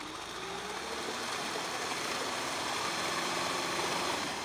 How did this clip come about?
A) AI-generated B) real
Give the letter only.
A